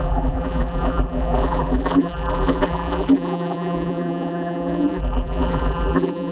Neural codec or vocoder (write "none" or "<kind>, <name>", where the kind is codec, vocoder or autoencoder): vocoder, BigVGAN v2